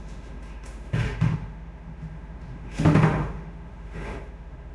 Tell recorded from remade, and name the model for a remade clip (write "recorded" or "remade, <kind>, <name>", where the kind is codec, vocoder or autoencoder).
remade, autoencoder, DAC-VAE